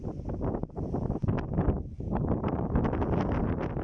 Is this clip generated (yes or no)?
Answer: no